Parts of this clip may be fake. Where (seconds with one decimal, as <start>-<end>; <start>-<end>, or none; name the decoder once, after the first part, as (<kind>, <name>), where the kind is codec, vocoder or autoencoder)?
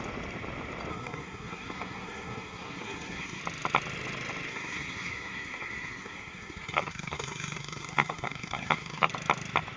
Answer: 0.9-3.4 (codec, SNAC); 4.5-9.1